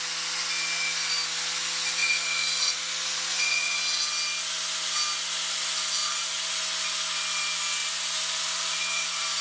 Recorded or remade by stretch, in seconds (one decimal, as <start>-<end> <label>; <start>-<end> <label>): 0.0-2.0 recorded; 2.0-3.8 remade; 3.8-6.0 recorded; 6.0-6.6 remade; 6.6-7.8 recorded; 7.8-9.4 remade